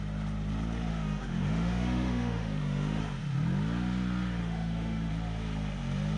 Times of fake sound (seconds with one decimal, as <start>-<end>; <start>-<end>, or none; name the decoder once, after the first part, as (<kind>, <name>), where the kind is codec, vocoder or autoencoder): 0.9-3.0 (autoencoder, DAC-VAE); 4.4-5.1